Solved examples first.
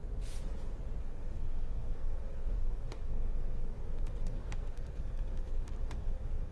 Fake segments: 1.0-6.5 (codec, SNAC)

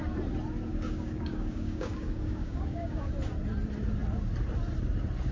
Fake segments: 0.7-3.1 (codec, DAC)

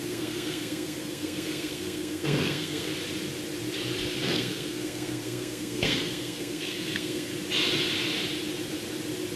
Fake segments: 0.0-2.9 (codec, SNAC); 4.2-7.3

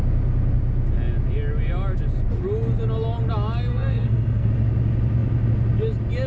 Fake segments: 3.7-4.5 (codec, SNAC)